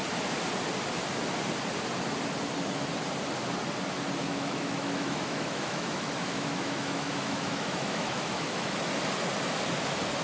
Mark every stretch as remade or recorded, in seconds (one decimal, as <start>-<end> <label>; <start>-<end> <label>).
0.0-4.2 recorded; 4.2-8.8 remade; 8.8-10.2 recorded